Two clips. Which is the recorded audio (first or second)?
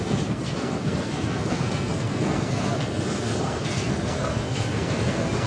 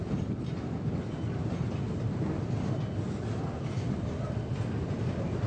second